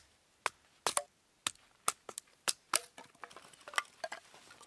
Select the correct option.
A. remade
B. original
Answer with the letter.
B